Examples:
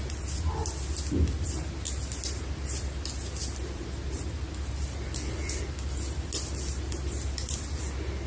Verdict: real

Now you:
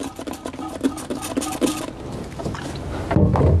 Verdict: real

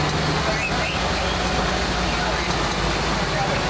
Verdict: real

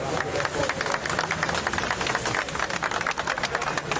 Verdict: real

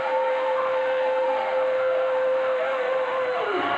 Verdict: fake